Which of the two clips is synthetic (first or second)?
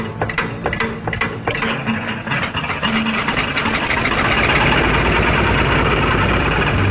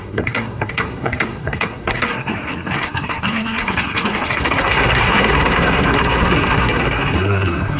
second